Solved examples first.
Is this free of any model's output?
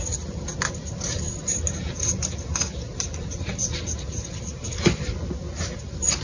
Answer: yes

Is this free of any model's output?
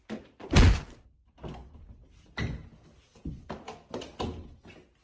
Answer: yes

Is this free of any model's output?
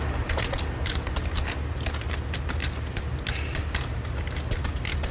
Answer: yes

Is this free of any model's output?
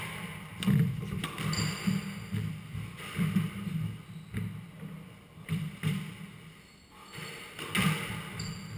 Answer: yes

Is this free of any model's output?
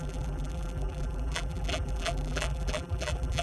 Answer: no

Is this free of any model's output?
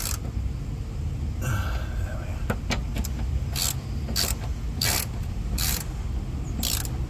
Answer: yes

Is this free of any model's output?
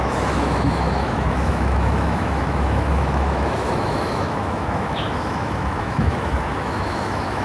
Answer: no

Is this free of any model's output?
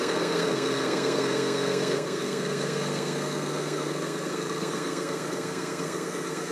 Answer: no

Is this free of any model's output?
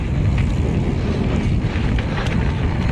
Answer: yes